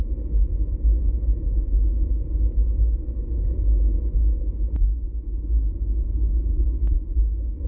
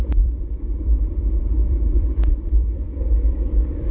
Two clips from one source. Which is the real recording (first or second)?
first